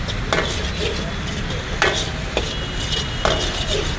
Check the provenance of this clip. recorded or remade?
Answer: recorded